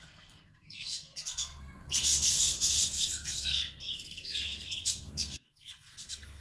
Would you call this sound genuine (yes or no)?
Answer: no